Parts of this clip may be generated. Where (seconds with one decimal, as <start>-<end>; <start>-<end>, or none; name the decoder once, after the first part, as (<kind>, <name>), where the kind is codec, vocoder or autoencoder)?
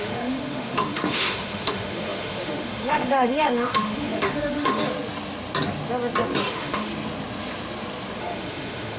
0.0-4.8 (autoencoder, DAC-VAE); 6.5-6.9; 8.2-9.0